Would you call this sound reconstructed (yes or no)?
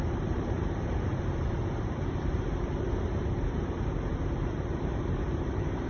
yes